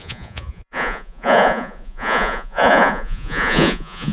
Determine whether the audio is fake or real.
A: fake